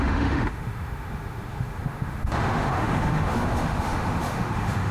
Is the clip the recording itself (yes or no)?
no